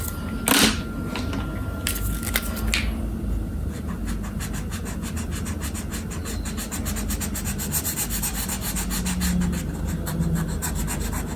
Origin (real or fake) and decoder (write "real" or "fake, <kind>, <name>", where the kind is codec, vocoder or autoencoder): real